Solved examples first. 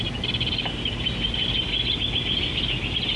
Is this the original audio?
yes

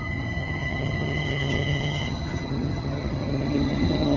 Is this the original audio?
no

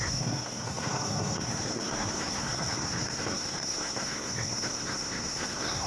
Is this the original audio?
no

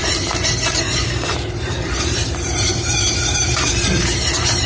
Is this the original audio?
no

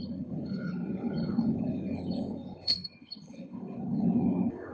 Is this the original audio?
no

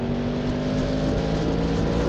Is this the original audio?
yes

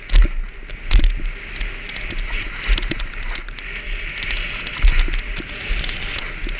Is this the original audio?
yes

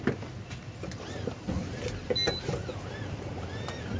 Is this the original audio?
yes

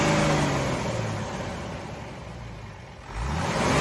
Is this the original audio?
yes